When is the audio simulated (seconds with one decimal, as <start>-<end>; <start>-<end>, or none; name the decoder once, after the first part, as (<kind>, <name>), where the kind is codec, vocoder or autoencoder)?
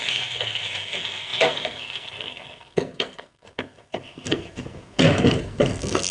0.0-6.1 (codec, SNAC)